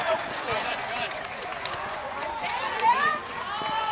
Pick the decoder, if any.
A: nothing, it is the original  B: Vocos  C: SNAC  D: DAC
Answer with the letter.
B